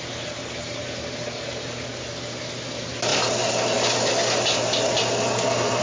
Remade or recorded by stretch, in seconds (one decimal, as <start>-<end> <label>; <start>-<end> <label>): 0.0-5.8 recorded